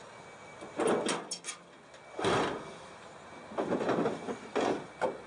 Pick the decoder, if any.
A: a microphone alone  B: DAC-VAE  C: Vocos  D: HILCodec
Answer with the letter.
A